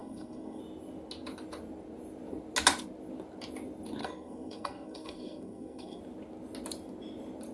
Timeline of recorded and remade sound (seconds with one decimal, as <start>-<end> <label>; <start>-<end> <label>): 0.0-0.6 remade; 0.6-4.0 recorded; 4.0-6.0 remade; 6.0-7.5 recorded